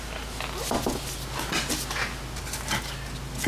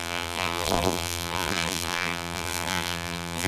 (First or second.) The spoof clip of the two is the second